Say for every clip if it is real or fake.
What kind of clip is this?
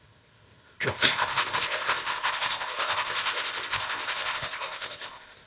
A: fake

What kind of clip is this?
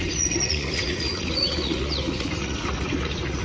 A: fake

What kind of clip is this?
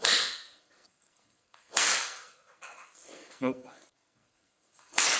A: fake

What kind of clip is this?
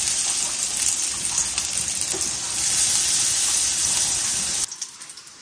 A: real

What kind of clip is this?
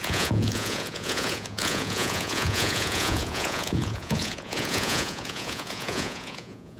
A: fake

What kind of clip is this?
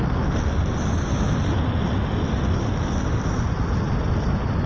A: real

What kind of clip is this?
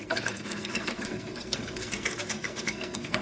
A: fake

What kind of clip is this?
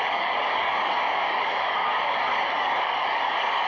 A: fake